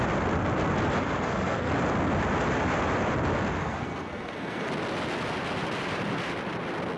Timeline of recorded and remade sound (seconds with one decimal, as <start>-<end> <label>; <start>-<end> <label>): 0.0-1.0 recorded; 1.0-1.7 remade; 1.7-3.6 recorded; 3.6-4.7 remade; 4.7-7.0 recorded